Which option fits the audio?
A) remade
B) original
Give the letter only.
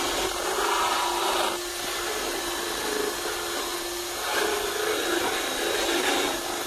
B